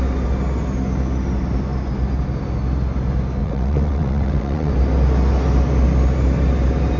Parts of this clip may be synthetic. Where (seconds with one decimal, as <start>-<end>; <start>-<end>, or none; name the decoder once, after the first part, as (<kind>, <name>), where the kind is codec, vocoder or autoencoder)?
3.4-4.7 (vocoder, WaveNeXt)